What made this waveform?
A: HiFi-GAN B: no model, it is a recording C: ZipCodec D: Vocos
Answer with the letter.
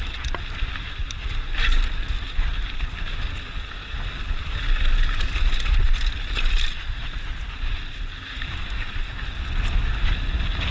B